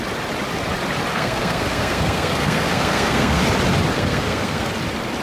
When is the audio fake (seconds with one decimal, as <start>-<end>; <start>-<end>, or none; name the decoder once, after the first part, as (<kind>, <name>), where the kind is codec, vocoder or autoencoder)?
1.1-3.4 (codec, SNAC); 3.9-4.7